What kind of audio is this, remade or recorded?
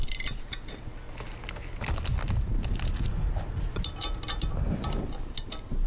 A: recorded